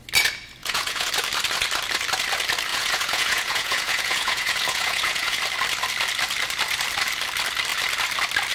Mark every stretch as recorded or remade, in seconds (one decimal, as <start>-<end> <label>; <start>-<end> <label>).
0.0-0.6 recorded; 0.6-1.1 remade; 1.1-2.7 recorded; 2.7-5.4 remade; 5.4-8.5 recorded